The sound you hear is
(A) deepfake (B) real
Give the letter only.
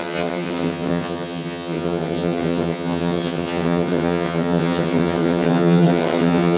A